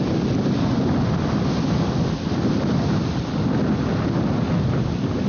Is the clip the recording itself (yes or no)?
yes